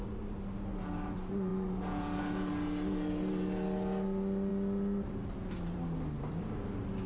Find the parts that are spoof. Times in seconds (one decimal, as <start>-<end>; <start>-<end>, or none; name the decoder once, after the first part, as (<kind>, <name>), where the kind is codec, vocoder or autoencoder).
none

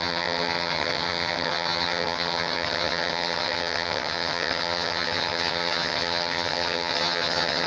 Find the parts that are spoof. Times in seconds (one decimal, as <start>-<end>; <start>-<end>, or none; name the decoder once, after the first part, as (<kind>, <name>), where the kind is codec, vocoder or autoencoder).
0.0-7.7 (vocoder, HiFi-GAN)

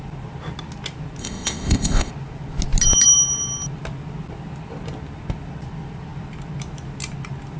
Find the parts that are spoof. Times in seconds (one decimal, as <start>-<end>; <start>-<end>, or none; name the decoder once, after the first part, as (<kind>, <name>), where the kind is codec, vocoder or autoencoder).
1.2-2.1 (codec, ZipCodec)

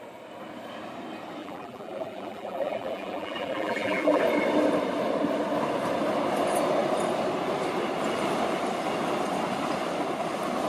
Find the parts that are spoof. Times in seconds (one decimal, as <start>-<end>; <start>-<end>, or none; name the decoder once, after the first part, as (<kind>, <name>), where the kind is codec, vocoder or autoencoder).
1.4-4.2 (vocoder, BigVGAN v2)

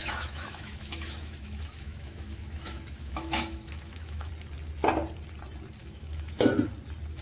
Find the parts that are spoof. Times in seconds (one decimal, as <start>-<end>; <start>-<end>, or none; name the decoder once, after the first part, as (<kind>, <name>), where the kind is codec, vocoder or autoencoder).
0.0-4.3 (autoencoder, DAC-VAE); 5.8-6.5

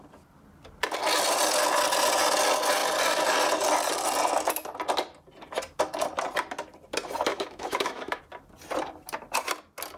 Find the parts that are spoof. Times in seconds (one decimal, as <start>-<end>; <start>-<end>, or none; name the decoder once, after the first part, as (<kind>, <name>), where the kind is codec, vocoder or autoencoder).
7.3-8.2 (autoencoder, DAC-VAE)

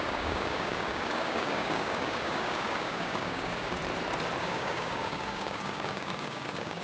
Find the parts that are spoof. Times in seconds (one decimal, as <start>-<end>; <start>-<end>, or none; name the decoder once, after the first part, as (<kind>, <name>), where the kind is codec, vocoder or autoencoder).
0.0-3.8 (codec, DAC); 4.4-6.8

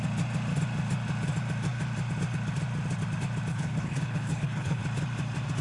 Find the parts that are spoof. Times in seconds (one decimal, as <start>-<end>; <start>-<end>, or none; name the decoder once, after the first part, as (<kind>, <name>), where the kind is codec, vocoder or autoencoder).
3.5-4.8 (codec, HILCodec)